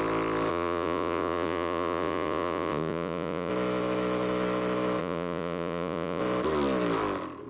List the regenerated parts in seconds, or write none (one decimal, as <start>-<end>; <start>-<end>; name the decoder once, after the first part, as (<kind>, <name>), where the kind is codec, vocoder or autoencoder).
0.5-3.5 (vocoder, Vocos); 5.0-6.2